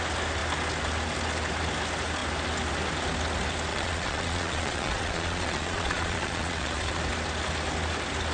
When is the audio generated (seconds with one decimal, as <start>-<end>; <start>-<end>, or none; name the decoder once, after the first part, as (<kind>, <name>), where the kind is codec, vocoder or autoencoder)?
3.7-7.0 (vocoder, Vocos)